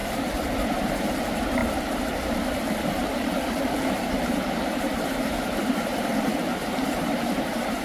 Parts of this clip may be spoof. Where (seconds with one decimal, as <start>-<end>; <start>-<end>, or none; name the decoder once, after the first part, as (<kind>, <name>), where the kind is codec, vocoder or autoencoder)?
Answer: 0.8-1.6 (vocoder, BigVGAN v2); 3.6-7.8